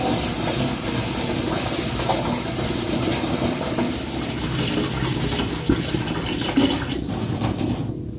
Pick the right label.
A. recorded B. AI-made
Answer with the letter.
A